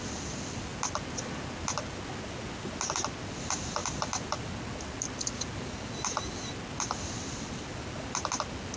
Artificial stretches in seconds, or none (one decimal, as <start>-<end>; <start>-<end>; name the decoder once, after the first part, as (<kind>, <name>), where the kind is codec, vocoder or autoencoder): none

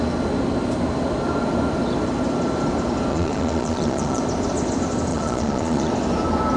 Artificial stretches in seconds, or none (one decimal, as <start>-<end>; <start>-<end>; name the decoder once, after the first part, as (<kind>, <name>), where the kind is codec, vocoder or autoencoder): 3.1-4.2 (vocoder, Vocos); 5.1-5.9

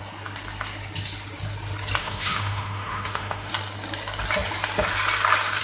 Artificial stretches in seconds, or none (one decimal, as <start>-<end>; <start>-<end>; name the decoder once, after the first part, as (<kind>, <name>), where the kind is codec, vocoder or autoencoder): 2.0-3.5 (autoencoder, DAC-VAE)

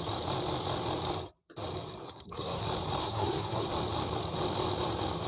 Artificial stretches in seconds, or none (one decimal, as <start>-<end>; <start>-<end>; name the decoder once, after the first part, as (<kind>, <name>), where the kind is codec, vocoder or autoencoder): 2.0-2.6 (codec, SNAC); 3.0-3.7